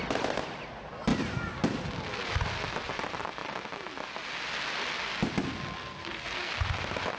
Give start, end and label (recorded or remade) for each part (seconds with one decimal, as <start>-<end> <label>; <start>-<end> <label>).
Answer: 0.0-5.8 recorded; 5.8-6.5 remade; 6.5-7.2 recorded